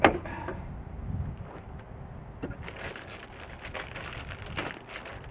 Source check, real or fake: real